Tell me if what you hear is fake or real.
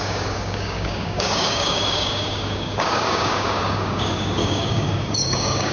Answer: fake